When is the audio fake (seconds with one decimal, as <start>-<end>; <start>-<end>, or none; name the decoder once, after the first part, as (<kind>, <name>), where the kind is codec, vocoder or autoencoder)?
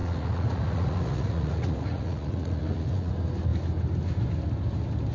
0.0-3.1 (vocoder, Vocos)